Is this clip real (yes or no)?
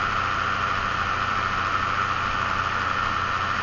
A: yes